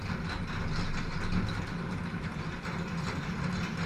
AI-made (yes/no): no